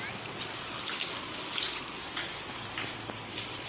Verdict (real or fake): fake